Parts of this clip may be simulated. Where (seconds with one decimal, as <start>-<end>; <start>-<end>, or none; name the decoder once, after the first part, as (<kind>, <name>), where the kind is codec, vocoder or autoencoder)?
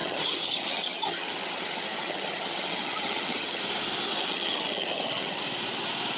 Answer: 0.0-3.6 (vocoder, HiFi-GAN); 4.1-5.4